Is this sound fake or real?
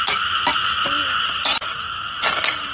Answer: real